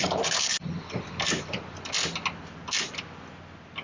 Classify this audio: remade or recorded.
recorded